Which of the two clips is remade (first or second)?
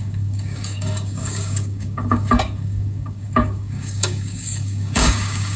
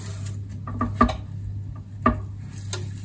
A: first